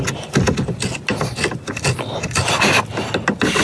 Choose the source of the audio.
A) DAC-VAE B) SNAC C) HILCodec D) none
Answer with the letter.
D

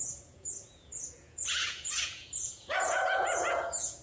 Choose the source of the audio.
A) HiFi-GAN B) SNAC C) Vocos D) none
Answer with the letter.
C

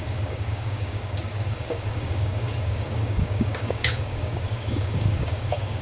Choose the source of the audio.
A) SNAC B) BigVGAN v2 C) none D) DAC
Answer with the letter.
D